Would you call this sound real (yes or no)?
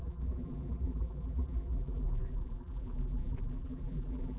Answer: no